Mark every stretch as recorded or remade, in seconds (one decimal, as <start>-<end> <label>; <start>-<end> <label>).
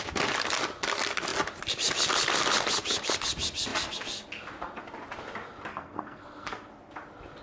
0.0-5.7 recorded; 5.7-6.7 remade; 6.7-7.4 recorded